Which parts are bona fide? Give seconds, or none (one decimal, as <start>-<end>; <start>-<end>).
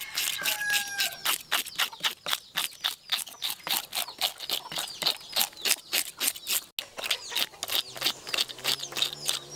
0.0-9.6